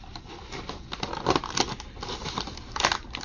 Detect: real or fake real